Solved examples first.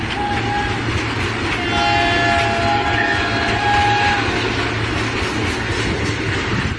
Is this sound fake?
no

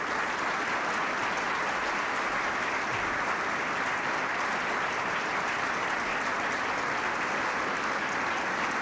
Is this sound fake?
no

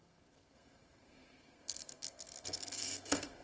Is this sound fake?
yes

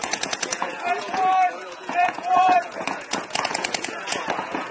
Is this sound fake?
yes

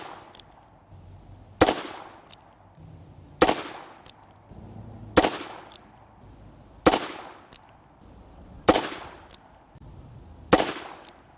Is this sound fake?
no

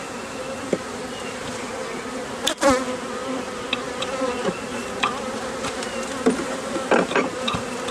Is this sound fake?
no